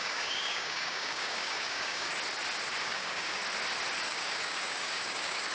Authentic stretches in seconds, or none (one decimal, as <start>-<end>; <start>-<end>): 2.1-2.8; 3.4-4.1